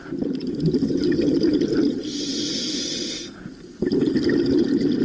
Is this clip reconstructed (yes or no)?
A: no